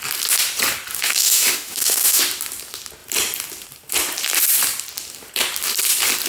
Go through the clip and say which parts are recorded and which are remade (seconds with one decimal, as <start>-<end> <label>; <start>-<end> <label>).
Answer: 0.0-0.9 recorded; 0.9-2.2 remade; 2.2-6.3 recorded